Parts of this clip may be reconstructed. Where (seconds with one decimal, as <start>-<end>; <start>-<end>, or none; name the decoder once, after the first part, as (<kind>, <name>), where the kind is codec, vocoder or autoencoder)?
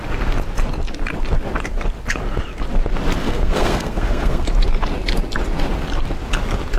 3.2-4.5 (codec, SNAC)